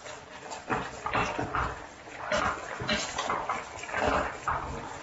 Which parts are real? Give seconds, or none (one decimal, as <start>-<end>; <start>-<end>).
0.0-5.0